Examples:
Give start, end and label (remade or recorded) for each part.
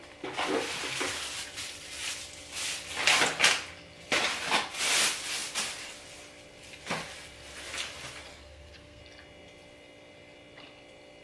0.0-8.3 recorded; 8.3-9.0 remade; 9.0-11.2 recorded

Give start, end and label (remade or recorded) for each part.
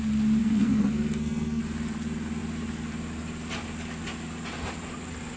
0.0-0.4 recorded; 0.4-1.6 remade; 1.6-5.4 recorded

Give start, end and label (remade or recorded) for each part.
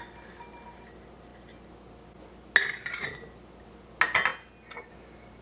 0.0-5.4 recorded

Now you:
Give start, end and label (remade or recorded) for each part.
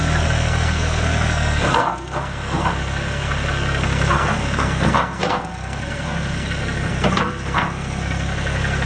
0.0-8.9 remade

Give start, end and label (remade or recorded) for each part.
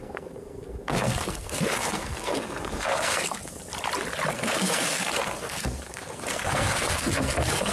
0.0-3.6 remade; 3.6-4.3 recorded; 4.3-7.7 remade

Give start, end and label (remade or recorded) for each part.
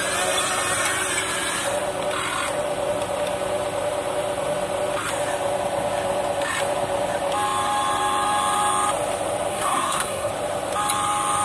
0.0-9.5 recorded; 9.5-10.3 remade; 10.3-11.4 recorded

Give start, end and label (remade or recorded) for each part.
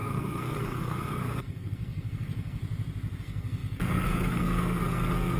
0.0-2.6 remade; 2.6-3.2 recorded; 3.2-5.4 remade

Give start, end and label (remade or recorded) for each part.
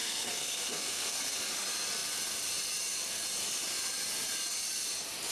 0.0-1.2 remade; 1.2-5.3 recorded